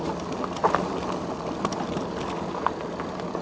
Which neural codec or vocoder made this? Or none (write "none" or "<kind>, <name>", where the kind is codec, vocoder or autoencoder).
vocoder, BigVGAN v2